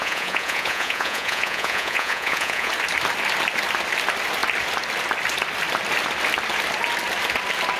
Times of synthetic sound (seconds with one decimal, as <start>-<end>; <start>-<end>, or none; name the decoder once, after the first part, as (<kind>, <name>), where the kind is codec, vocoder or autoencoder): 0.0-2.7 (vocoder, Vocos)